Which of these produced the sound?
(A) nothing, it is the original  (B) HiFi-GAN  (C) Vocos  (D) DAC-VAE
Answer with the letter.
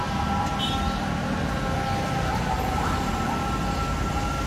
A